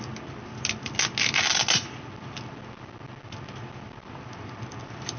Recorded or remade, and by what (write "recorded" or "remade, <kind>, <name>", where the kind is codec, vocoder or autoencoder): recorded